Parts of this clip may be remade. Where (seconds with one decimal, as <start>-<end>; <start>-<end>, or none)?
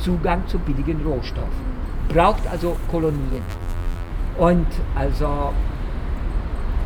3.3-4.1